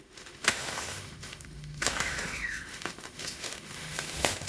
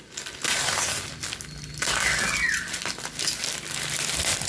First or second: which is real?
second